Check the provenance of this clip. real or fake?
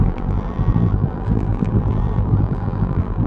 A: fake